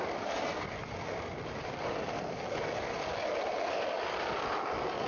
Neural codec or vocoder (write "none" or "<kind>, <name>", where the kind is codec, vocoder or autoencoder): none